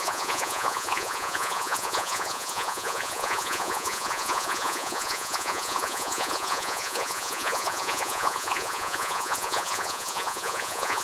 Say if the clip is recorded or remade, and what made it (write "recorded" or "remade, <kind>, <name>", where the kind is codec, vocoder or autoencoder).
remade, vocoder, Vocos